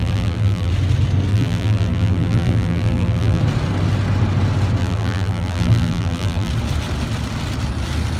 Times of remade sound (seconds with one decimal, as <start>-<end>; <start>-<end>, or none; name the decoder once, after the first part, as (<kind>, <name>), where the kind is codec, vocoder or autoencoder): 0.0-0.7 (vocoder, BigVGAN v2); 1.3-3.4; 4.8-6.5